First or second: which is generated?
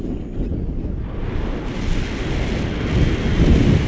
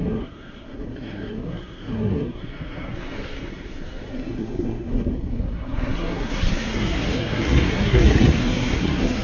second